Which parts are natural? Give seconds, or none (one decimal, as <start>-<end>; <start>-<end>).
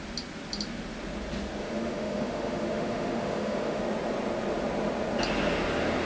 0.0-1.6; 3.8-6.0